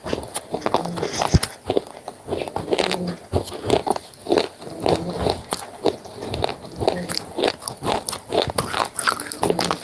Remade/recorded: recorded